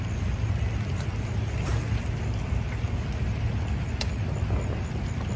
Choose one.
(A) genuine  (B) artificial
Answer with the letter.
A